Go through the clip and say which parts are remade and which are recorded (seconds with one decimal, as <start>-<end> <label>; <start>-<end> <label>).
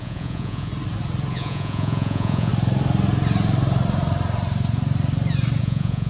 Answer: 0.0-0.7 remade; 0.7-1.3 recorded; 1.3-2.5 remade; 2.5-5.6 recorded; 5.6-6.1 remade